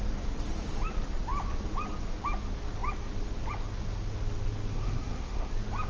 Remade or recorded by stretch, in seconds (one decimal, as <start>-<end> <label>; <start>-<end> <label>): 0.0-4.7 recorded; 4.7-5.5 remade; 5.5-5.9 recorded